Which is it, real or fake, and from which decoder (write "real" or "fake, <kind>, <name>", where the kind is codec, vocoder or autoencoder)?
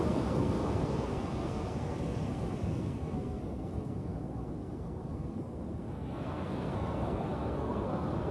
fake, codec, SNAC